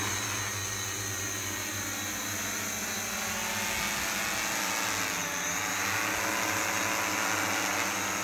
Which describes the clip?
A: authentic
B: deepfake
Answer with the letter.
A